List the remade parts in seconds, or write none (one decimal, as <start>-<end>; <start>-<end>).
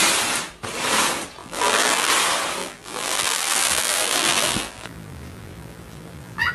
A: 1.4-2.1; 2.6-6.5